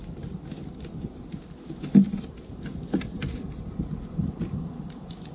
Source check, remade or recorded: recorded